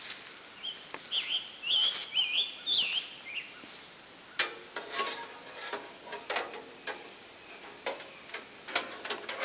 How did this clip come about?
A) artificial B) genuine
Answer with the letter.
B